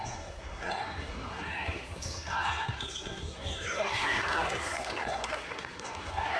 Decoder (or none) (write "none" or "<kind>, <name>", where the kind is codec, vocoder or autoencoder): codec, SNAC